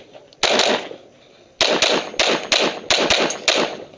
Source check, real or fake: real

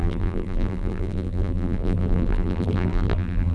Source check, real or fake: fake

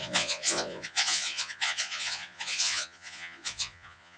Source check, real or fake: fake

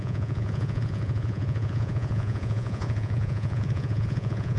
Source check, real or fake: fake